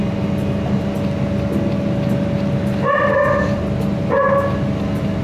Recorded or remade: recorded